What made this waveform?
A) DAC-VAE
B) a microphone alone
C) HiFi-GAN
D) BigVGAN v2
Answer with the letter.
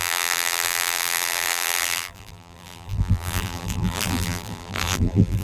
D